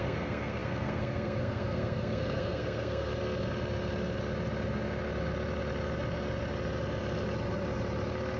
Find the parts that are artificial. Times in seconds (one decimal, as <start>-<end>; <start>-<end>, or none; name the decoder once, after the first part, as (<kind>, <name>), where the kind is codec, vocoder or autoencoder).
0.0-3.1 (codec, SNAC)